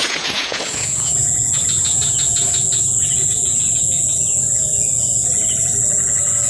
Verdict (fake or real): fake